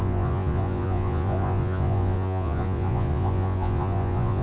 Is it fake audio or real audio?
fake